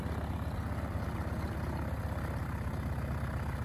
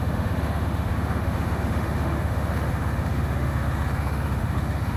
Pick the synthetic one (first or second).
second